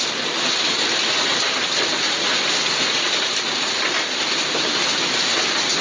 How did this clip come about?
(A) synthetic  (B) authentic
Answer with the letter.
B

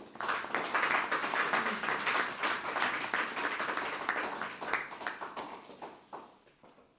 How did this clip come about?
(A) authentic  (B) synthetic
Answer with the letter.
A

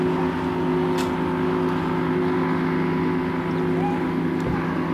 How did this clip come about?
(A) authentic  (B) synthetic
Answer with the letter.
A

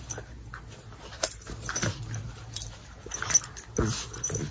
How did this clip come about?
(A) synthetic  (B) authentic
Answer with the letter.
B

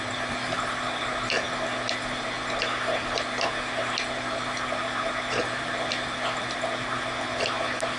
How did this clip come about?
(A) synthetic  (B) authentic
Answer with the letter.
B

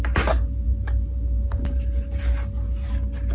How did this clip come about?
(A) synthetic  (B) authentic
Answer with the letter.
B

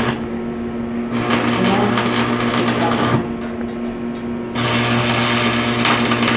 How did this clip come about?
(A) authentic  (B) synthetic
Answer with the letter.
A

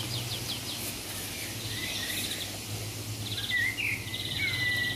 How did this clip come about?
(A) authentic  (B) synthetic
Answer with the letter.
A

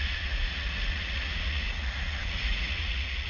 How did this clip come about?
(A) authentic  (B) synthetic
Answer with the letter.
B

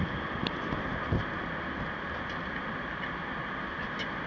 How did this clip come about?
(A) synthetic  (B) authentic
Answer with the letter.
B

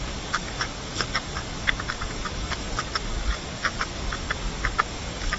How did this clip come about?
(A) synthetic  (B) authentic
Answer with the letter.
A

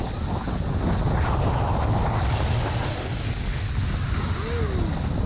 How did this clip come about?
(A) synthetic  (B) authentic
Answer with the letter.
B